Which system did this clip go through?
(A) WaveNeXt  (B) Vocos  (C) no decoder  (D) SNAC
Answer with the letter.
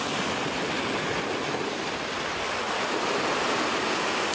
C